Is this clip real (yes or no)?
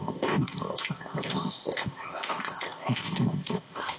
no